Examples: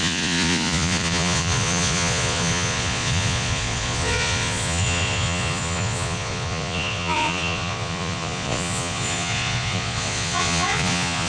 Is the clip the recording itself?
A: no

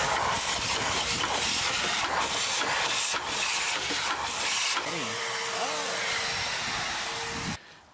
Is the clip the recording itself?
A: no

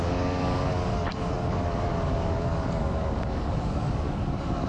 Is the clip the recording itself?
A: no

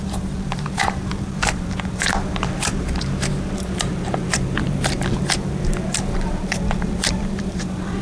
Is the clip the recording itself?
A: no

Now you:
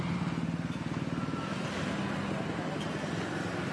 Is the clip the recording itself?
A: yes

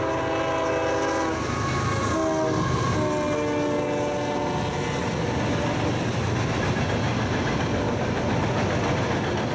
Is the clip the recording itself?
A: yes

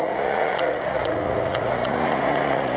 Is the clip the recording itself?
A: no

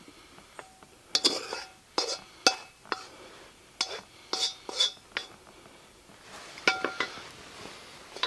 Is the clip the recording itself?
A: yes